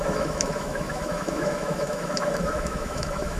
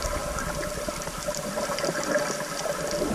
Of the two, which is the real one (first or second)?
second